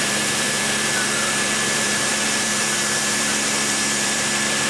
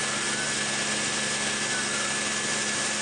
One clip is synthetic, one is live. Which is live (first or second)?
second